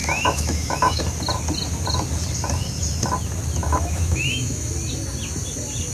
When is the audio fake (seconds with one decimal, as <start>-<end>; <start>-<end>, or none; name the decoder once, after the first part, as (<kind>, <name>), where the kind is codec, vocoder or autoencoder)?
0.0-1.0 (autoencoder, DAC-VAE); 3.6-4.7